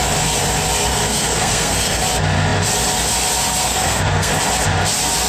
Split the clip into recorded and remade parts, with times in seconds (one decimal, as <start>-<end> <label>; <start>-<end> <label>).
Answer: 0.0-0.9 recorded; 0.9-2.0 remade; 2.0-3.6 recorded; 3.6-4.3 remade; 4.3-5.3 recorded